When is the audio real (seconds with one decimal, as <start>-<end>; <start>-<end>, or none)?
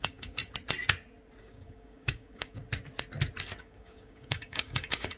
0.4-1.4; 2.6-3.6